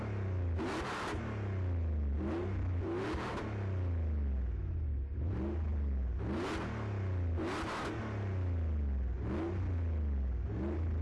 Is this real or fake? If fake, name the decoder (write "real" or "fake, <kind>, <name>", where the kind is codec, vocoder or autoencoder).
real